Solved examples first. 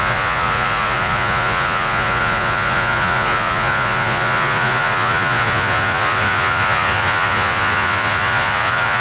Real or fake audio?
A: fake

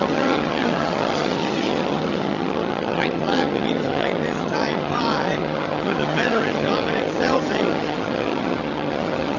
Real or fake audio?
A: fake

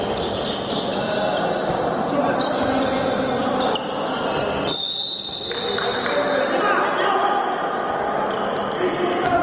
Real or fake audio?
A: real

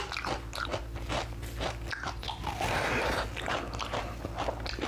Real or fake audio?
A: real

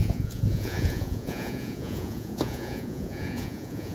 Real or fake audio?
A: fake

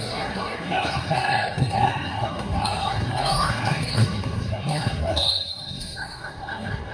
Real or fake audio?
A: fake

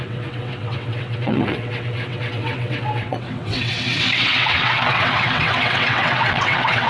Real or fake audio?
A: fake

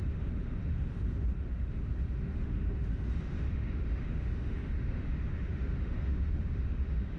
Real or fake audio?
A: fake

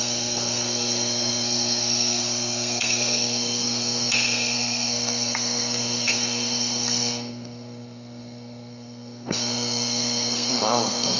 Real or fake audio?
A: fake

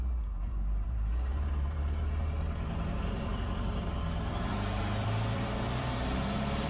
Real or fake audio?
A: fake